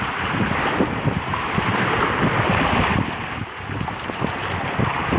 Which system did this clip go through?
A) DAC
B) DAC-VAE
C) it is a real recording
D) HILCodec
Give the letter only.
C